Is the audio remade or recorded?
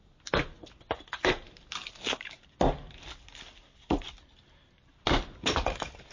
recorded